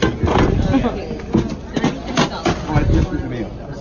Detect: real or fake real